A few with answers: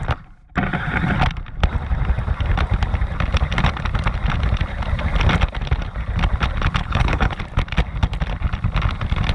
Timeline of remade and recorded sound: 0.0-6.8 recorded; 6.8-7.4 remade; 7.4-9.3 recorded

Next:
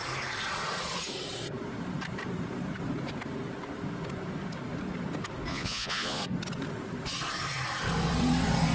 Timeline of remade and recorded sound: 0.0-5.5 recorded; 5.5-6.2 remade; 6.2-8.7 recorded

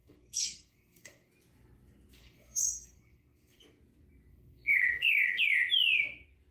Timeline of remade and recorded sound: 0.0-1.3 remade; 1.3-2.1 recorded; 2.1-3.6 remade; 3.6-4.3 recorded; 4.3-5.4 remade; 5.4-6.5 recorded

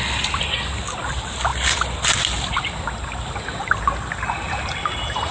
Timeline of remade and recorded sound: 0.0-5.3 recorded

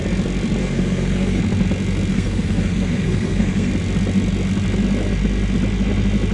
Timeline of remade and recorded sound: 0.0-0.6 recorded; 0.6-1.4 remade; 1.4-2.1 recorded; 2.1-3.7 remade; 3.7-6.3 recorded

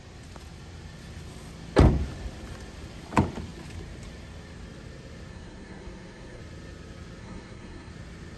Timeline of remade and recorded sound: 0.0-5.3 recorded; 5.3-6.4 remade; 6.4-7.2 recorded; 7.2-7.9 remade; 7.9-8.4 recorded

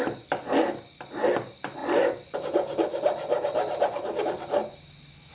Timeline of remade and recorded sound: 0.0-5.3 recorded